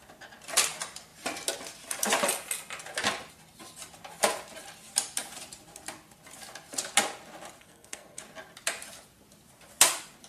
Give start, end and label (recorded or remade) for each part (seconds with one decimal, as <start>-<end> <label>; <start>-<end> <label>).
0.0-7.6 recorded; 7.6-8.2 remade; 8.2-10.3 recorded